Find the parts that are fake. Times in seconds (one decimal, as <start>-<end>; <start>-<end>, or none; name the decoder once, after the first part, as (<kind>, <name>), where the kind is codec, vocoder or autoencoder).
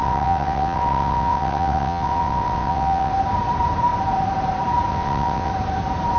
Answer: 0.0-3.1 (vocoder, WaveNeXt); 4.9-5.5